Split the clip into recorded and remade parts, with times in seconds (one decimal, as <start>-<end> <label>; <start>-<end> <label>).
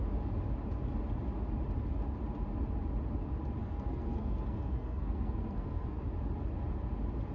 0.0-3.6 recorded; 3.6-6.0 remade; 6.0-7.3 recorded